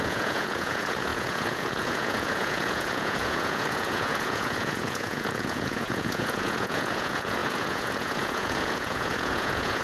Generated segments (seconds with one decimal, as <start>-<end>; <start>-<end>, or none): 0.0-9.8